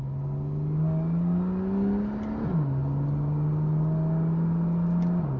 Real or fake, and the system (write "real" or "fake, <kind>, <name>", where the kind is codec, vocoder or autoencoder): real